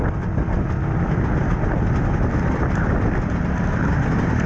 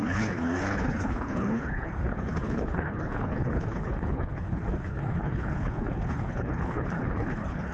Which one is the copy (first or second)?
second